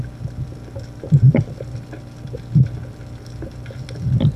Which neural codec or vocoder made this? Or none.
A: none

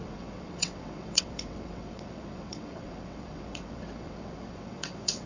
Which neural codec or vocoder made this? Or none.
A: vocoder, WaveNeXt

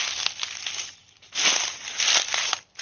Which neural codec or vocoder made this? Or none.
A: none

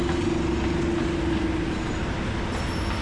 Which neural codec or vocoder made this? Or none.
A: none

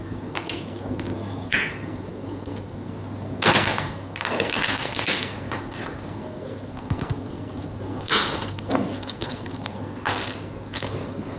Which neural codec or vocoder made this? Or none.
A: codec, SNAC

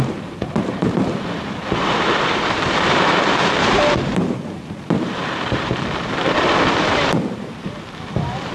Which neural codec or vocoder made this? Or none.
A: vocoder, BigVGAN v2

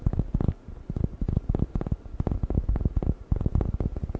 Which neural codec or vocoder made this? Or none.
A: none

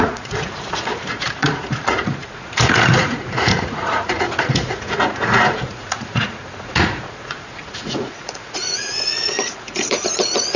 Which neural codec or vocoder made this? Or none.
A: vocoder, Vocos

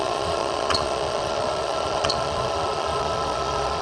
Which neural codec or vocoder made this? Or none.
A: vocoder, Vocos